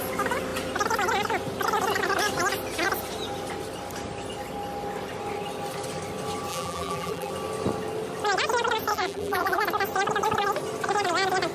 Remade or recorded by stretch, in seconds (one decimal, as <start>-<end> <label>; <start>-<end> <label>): 0.0-6.5 recorded; 6.5-7.3 remade; 7.3-8.9 recorded; 8.9-9.6 remade; 9.6-11.5 recorded